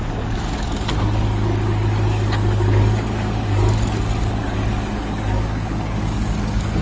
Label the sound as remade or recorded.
remade